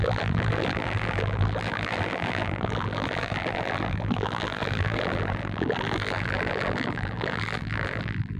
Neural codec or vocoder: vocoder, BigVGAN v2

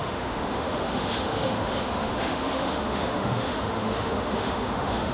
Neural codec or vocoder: autoencoder, DAC-VAE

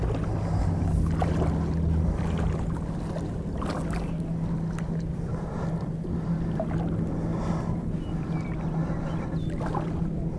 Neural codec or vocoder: none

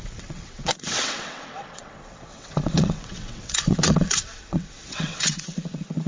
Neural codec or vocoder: vocoder, WaveNeXt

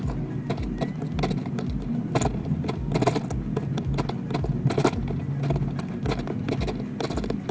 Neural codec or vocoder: none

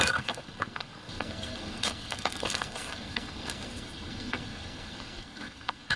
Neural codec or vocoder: codec, SNAC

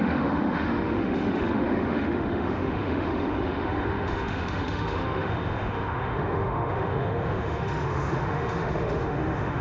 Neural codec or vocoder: autoencoder, DAC-VAE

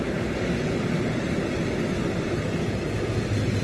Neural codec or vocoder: none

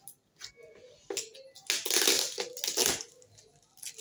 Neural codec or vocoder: none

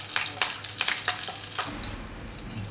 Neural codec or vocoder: none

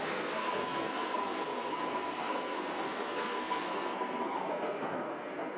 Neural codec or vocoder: codec, SNAC